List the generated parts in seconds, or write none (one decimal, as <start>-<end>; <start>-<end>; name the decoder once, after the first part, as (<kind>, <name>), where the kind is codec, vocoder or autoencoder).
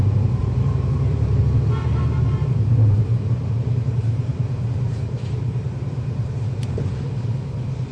0.4-1.4 (vocoder, BigVGAN v2); 2.4-7.1